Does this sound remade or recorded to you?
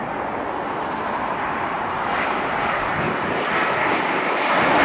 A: recorded